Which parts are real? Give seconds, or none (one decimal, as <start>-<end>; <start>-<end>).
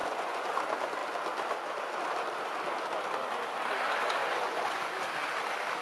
0.5-4.2; 4.9-5.8